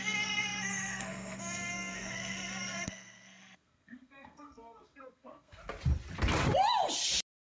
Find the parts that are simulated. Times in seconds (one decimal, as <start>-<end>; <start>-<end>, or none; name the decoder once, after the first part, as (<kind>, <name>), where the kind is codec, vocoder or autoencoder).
0.0-5.6 (codec, SNAC)